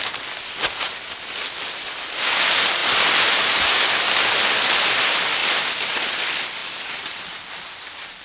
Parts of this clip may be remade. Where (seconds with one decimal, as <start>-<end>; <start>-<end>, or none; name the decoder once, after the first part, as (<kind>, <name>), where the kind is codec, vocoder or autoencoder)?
2.8-4.0 (vocoder, BigVGAN v2); 5.4-6.1; 6.6-7.1